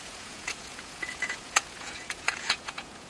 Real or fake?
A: fake